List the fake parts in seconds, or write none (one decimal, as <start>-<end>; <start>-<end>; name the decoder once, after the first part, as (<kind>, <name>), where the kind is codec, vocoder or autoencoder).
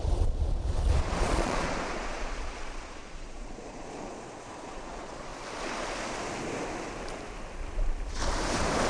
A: 0.0-5.3 (vocoder, Vocos)